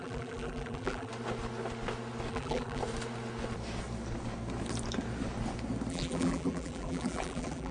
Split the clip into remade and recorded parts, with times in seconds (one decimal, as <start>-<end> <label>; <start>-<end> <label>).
0.0-1.1 remade; 1.1-2.3 recorded; 2.3-2.8 remade; 2.8-5.9 recorded; 5.9-7.7 remade